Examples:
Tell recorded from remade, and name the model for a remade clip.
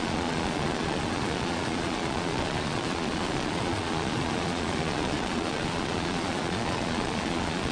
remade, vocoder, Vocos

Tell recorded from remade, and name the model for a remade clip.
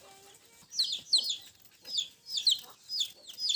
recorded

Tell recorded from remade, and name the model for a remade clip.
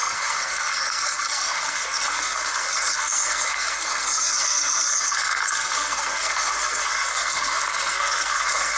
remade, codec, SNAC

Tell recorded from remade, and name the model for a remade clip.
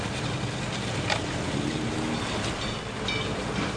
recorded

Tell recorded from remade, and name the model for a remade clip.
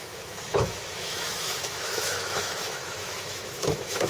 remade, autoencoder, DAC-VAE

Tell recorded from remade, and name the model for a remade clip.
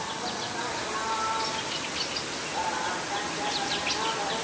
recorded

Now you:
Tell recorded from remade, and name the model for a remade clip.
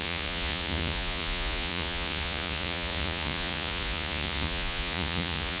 remade, vocoder, Vocos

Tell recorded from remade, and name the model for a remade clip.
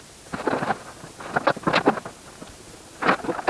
recorded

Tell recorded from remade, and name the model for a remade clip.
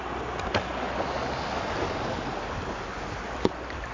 recorded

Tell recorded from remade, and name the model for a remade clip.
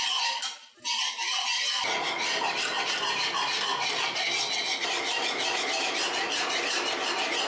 recorded